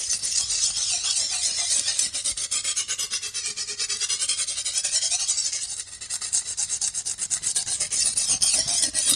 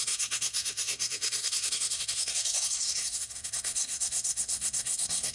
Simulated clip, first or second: second